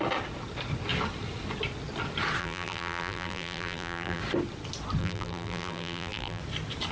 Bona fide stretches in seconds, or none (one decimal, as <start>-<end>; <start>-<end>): 0.0-2.4; 4.2-5.0; 6.4-6.9